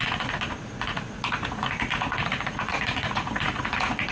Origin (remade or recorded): remade